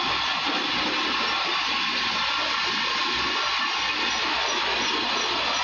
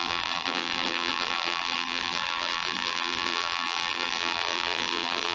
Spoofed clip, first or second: second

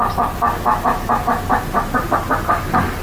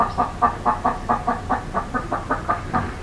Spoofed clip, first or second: second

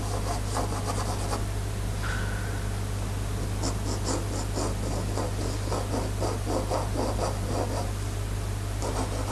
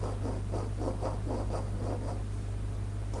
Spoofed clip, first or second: first